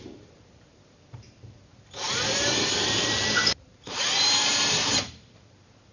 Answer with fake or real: fake